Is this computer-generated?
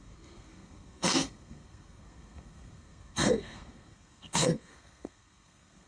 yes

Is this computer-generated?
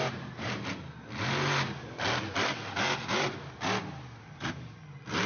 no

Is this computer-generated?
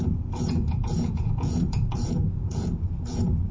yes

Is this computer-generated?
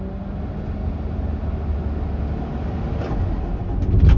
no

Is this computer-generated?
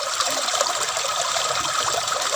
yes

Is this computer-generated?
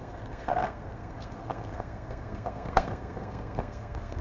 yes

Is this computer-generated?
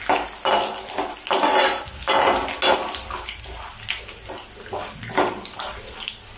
no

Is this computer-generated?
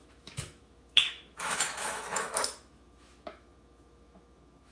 yes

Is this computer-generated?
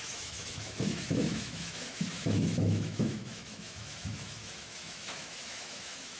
yes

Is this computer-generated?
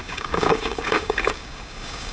yes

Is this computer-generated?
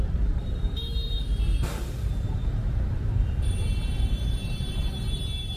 yes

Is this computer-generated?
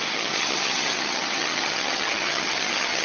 yes